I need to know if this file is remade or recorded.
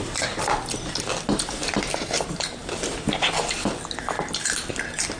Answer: recorded